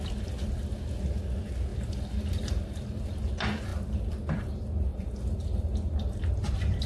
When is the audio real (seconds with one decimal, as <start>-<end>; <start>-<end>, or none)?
0.0-1.7; 3.3-4.9; 6.2-6.9